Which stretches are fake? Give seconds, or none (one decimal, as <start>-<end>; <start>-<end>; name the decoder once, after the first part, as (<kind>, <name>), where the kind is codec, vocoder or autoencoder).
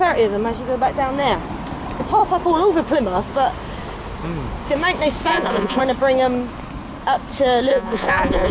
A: 5.3-5.8 (vocoder, Vocos); 7.7-8.5